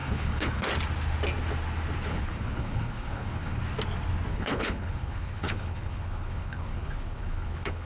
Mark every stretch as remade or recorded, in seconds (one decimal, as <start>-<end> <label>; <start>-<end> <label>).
0.0-0.7 remade; 0.7-2.1 recorded; 2.1-3.6 remade; 3.6-4.3 recorded; 4.3-7.9 remade